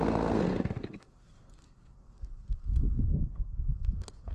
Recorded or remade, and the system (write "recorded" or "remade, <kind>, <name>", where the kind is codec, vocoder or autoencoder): remade, codec, SNAC